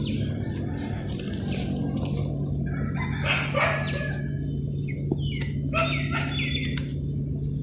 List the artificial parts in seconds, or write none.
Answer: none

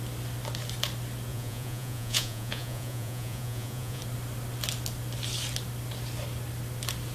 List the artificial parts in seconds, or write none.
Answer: 1.3-4.0 (vocoder, Vocos)

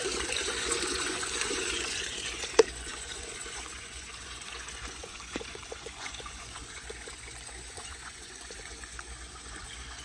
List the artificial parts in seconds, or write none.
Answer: 0.0-10.0 (vocoder, Vocos)

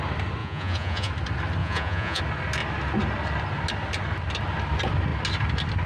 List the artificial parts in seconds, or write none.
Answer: 0.4-1.1 (vocoder, Vocos); 1.6-2.2